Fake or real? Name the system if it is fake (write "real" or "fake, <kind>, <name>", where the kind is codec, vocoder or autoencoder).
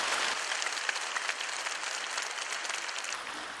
real